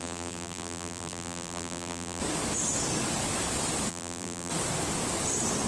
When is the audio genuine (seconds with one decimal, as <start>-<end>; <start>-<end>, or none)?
2.2-3.9; 4.5-5.7